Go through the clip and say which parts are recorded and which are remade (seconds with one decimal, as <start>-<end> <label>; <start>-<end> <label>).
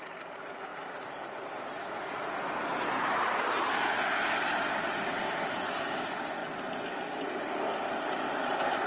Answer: 0.0-0.7 recorded; 0.7-3.4 remade; 3.4-8.9 recorded